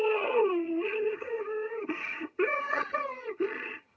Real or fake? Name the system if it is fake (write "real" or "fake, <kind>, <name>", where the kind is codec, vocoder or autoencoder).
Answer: fake, vocoder, HiFi-GAN